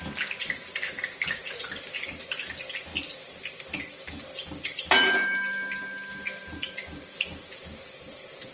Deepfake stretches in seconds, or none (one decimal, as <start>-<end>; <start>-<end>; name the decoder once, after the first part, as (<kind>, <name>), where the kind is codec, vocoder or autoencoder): 0.4-2.2 (vocoder, BigVGAN v2); 6.4-8.5

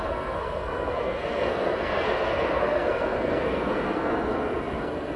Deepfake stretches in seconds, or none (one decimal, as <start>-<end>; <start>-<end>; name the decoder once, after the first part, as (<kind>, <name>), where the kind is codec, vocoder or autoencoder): 0.0-5.2 (codec, SNAC)

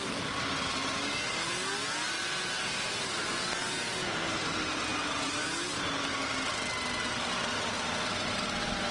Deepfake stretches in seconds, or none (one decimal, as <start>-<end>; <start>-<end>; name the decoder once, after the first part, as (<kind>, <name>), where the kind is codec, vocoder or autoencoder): none

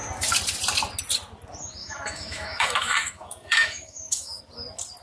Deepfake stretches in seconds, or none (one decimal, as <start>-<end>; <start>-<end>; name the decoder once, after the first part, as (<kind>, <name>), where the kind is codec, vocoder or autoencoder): 1.8-4.4 (autoencoder, DAC-VAE)

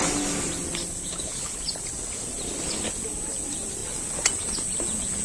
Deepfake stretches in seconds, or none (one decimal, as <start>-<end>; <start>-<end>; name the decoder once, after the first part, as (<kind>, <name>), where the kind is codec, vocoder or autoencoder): 1.0-1.6 (codec, HILCodec)

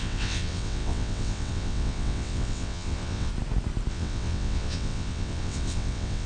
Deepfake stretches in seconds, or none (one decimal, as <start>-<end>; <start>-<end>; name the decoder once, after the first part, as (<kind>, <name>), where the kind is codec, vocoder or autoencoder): 0.0-3.3 (vocoder, WaveNeXt); 3.9-6.3